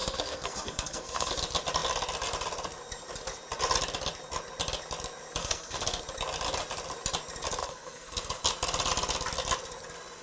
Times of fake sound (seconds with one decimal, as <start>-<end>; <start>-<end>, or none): 0.0-1.3; 5.4-6.0; 7.6-8.4